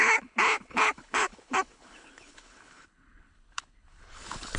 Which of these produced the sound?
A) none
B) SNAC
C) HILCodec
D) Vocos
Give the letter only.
C